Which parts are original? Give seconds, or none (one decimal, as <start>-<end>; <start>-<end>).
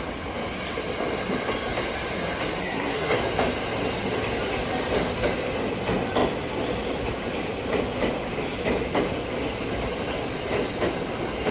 0.0-2.6; 3.2-11.5